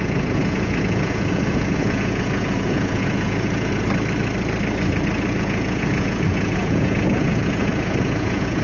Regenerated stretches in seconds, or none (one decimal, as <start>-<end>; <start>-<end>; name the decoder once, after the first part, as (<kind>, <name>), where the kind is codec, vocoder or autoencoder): 0.0-3.8 (vocoder, Vocos); 5.3-8.6